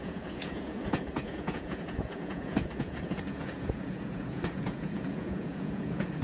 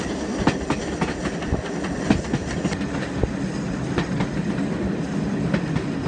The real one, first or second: second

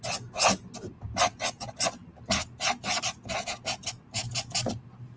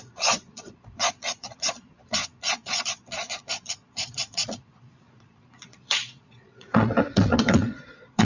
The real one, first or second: first